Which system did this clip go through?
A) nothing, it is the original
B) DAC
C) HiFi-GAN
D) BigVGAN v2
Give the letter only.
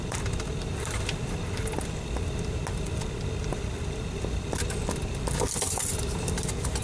A